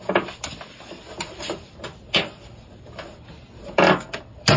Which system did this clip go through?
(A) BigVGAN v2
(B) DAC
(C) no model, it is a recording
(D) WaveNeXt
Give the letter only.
C